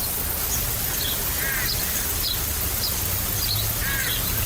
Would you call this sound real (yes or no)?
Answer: yes